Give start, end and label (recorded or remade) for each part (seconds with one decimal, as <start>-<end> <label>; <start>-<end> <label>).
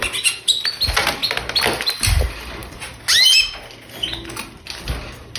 0.0-5.4 recorded